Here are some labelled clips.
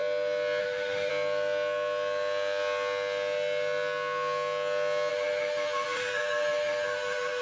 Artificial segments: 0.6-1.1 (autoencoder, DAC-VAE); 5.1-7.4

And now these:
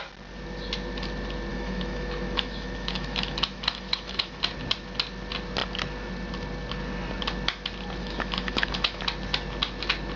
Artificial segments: 1.5-4.4 (autoencoder, DAC-VAE); 8.0-9.0

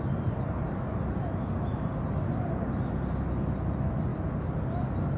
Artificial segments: none